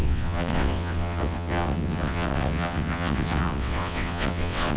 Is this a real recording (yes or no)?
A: no